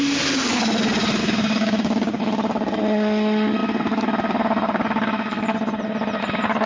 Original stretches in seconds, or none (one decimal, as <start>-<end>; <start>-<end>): 0.0-1.2; 2.2-6.7